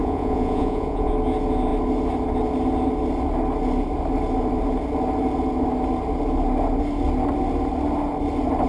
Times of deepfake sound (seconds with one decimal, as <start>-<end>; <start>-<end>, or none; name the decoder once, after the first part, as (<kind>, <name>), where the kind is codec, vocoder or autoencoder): 0.0-1.1 (vocoder, Vocos)